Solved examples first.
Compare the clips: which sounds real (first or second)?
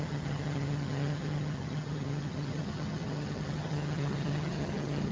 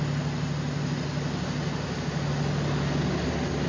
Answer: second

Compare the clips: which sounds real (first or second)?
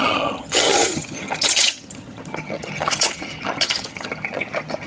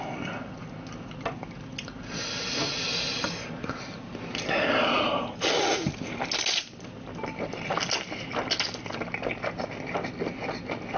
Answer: second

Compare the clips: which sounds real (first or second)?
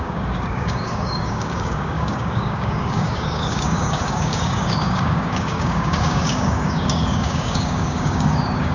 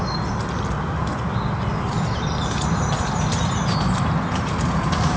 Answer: second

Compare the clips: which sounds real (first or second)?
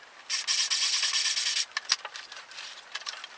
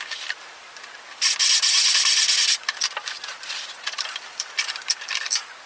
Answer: first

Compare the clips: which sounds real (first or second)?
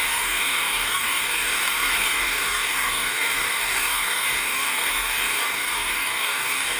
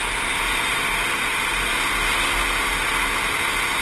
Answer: second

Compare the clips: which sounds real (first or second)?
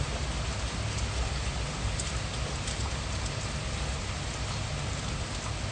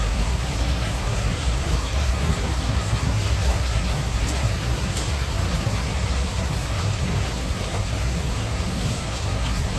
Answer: first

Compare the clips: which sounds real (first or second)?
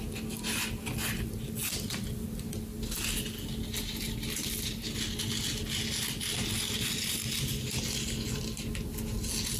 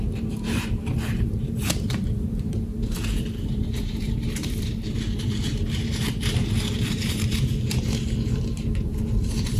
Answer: first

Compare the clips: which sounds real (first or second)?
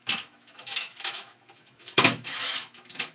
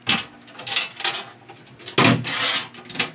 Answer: second